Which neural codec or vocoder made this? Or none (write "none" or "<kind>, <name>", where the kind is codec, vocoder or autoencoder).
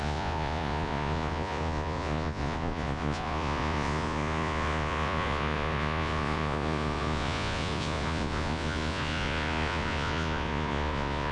vocoder, Vocos